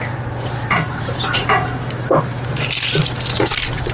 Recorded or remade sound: remade